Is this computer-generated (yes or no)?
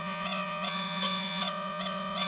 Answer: yes